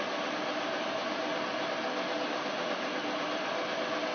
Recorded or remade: recorded